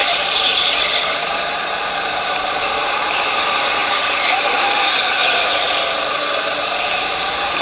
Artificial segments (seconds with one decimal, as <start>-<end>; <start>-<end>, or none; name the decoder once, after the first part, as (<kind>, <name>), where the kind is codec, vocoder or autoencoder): 0.0-5.2 (vocoder, BigVGAN v2); 6.9-7.6